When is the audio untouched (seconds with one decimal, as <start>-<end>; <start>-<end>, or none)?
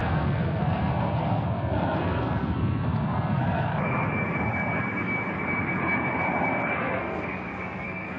3.7-6.7